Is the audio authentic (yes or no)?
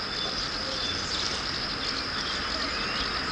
yes